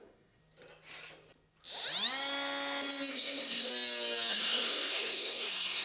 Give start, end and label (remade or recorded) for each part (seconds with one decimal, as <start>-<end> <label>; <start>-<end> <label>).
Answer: 0.0-0.4 remade; 0.4-3.1 recorded; 3.1-3.7 remade; 3.7-4.3 recorded; 4.3-5.8 remade